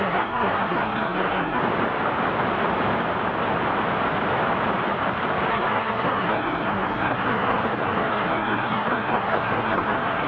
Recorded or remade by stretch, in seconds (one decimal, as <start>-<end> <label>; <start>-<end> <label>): 0.0-1.6 remade; 1.6-5.5 recorded; 5.5-10.3 remade